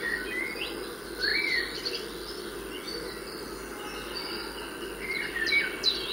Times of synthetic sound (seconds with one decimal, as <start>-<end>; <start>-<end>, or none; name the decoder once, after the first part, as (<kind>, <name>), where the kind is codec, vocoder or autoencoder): none